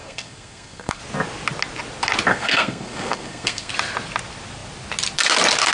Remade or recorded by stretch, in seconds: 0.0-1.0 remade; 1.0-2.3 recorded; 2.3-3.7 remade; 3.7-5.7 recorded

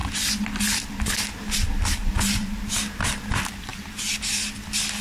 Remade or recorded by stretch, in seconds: 0.0-5.0 recorded